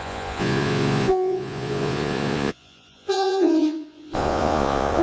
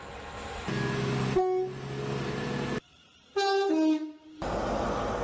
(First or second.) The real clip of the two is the second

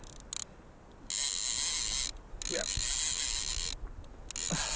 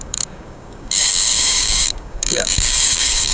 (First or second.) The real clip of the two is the first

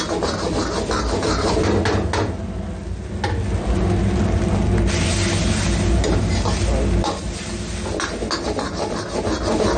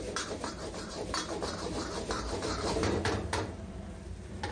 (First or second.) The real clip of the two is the first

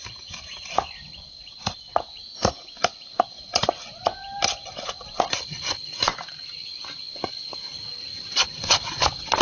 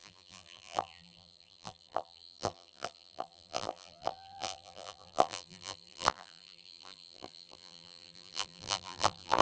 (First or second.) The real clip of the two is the first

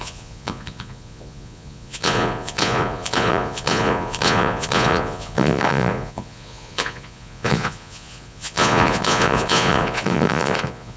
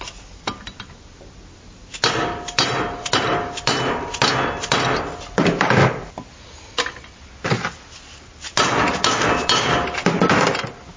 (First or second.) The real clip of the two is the second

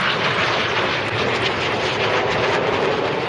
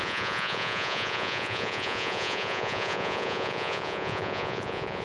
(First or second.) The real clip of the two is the first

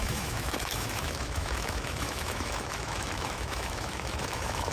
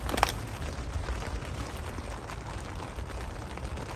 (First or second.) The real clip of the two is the second